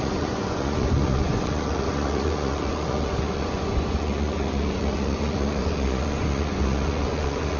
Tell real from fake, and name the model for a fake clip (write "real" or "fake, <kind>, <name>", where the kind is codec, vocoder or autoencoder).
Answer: fake, vocoder, Vocos